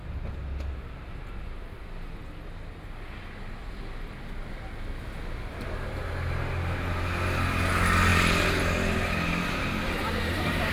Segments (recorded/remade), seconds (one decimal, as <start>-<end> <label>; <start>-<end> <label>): 0.0-8.1 recorded; 8.1-10.7 remade